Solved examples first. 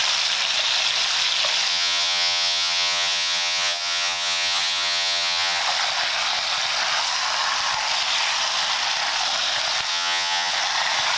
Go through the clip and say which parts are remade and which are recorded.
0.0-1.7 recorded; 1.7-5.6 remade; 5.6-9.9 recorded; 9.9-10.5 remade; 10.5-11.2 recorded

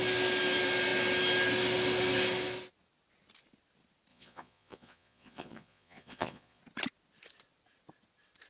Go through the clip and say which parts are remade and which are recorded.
0.0-4.1 recorded; 4.1-6.6 remade; 6.6-8.5 recorded

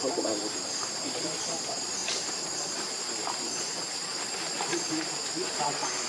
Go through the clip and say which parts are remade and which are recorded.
0.0-6.1 recorded

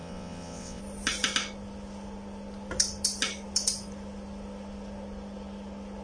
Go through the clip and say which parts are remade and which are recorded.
0.0-0.8 remade; 0.8-6.0 recorded

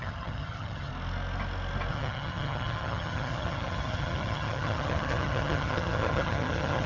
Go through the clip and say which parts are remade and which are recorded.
0.0-0.9 remade; 0.9-1.9 recorded; 1.9-6.9 remade

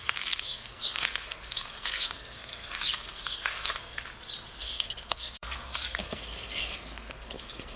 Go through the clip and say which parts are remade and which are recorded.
0.0-4.1 remade; 4.1-4.6 recorded; 4.6-7.8 remade